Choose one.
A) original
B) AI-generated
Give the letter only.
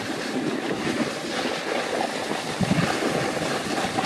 A